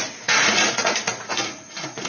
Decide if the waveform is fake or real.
fake